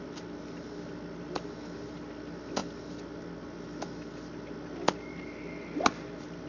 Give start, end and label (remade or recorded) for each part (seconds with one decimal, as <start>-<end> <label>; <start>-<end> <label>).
0.0-6.5 recorded